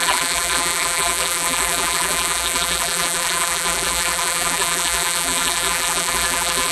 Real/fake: fake